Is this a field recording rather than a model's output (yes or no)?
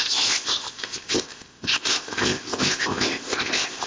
no